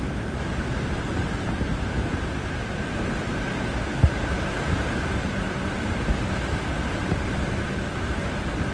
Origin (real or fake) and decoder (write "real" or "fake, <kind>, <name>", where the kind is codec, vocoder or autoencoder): real